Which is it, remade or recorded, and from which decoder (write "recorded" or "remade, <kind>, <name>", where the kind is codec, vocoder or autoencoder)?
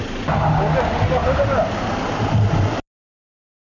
recorded